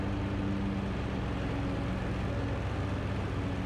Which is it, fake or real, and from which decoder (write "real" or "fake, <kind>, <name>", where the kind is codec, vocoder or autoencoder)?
real